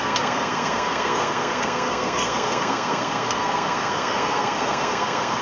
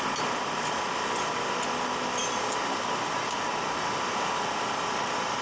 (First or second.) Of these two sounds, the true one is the second